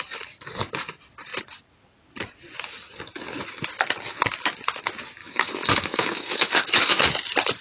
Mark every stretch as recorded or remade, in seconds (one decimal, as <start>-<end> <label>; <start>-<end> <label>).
0.0-5.2 recorded; 5.2-7.0 remade; 7.0-7.6 recorded